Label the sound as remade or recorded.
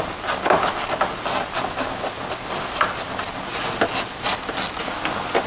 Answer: recorded